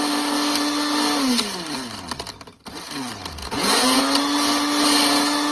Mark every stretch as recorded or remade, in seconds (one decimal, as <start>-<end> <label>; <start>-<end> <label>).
0.0-3.4 recorded; 3.4-4.0 remade; 4.0-5.5 recorded